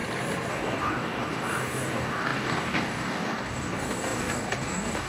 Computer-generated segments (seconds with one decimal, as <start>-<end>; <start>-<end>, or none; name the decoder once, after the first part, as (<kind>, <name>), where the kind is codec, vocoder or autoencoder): 0.5-5.1 (codec, DAC)